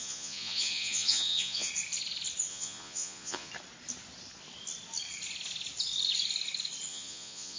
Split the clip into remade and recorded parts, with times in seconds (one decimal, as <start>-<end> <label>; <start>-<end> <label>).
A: 0.0-1.7 remade; 1.7-2.5 recorded; 2.5-3.5 remade; 3.5-6.9 recorded; 6.9-7.6 remade